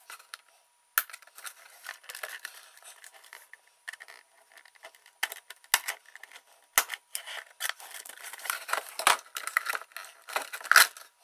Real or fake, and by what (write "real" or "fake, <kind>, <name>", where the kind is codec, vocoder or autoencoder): real